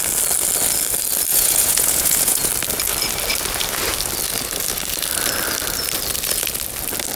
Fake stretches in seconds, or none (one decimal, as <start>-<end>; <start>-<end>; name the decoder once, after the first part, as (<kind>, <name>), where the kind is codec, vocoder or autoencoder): 1.3-2.5 (vocoder, Vocos)